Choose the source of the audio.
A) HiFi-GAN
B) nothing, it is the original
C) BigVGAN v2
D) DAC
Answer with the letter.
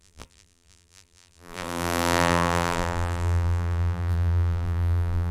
C